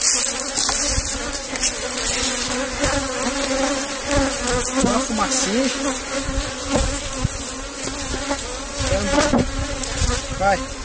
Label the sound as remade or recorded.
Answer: recorded